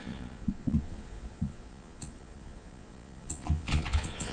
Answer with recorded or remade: remade